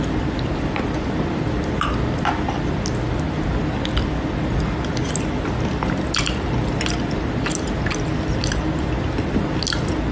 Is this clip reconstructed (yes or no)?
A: no